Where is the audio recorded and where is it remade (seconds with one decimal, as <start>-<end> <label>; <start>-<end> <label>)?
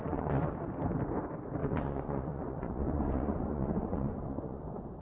0.0-0.5 remade; 0.5-1.6 recorded; 1.6-4.6 remade; 4.6-5.0 recorded